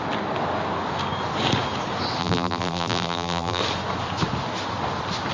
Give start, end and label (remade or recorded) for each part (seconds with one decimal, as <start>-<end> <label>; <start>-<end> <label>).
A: 0.0-2.2 recorded; 2.2-3.6 remade; 3.6-5.3 recorded